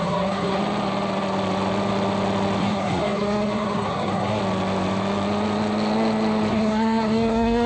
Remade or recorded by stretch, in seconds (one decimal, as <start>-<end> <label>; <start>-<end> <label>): 0.0-0.6 remade; 0.6-2.6 recorded; 2.6-4.4 remade; 4.4-6.5 recorded; 6.5-7.7 remade